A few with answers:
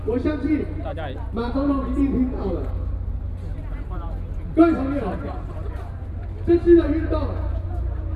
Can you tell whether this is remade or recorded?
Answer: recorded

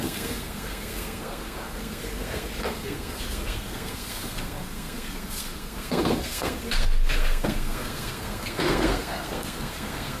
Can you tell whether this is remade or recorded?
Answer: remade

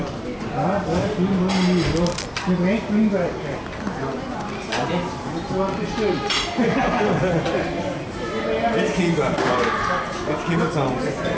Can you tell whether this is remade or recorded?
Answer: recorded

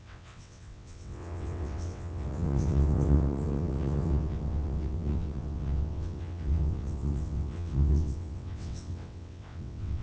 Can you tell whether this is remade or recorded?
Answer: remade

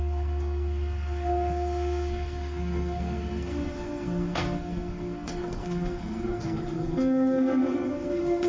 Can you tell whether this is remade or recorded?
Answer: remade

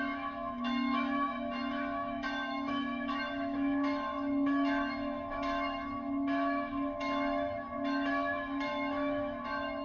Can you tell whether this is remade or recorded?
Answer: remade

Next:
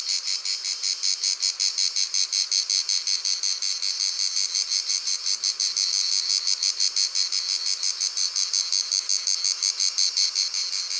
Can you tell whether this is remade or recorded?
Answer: recorded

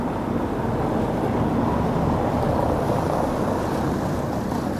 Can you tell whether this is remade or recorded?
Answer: recorded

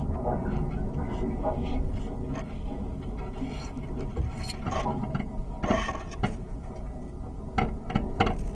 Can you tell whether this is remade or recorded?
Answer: recorded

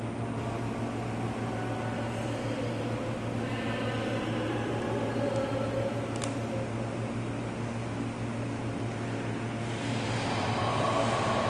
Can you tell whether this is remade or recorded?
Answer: recorded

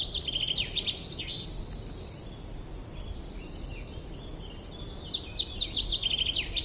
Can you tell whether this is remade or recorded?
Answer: recorded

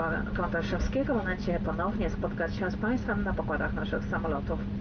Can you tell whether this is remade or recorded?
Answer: recorded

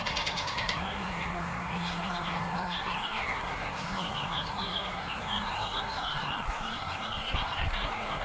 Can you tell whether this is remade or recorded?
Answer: remade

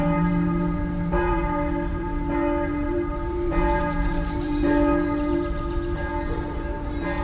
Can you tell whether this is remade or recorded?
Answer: remade